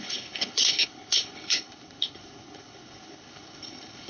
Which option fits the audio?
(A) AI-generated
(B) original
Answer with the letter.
A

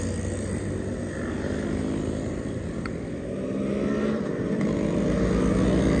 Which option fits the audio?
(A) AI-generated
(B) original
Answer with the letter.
B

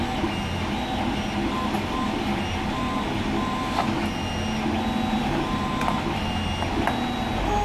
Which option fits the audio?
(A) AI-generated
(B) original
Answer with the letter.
B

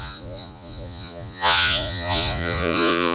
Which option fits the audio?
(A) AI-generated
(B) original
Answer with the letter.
A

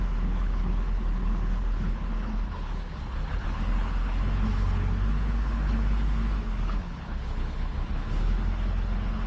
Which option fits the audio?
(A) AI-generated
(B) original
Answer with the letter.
A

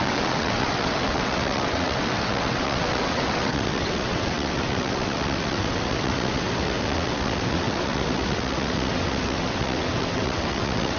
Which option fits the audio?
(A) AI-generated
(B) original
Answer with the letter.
A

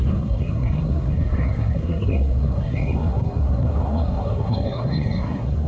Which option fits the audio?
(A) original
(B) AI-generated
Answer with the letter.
B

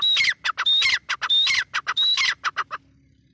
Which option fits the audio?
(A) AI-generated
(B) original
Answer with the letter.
B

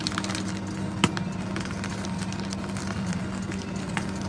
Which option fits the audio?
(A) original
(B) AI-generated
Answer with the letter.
A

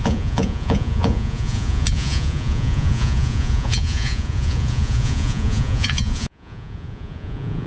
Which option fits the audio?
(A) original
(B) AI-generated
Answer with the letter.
B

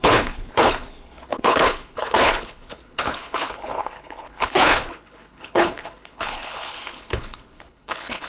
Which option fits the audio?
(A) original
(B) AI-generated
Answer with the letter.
B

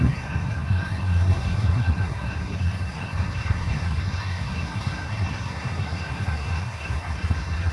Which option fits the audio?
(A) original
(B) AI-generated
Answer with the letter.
B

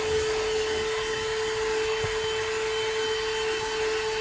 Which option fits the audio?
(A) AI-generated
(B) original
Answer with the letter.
B